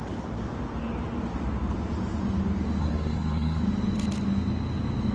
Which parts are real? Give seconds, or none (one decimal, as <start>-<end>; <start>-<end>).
0.0-2.8; 3.6-5.1

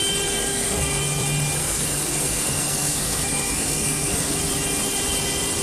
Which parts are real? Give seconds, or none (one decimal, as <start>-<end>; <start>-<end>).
0.0-0.4; 1.0-1.6; 4.4-5.6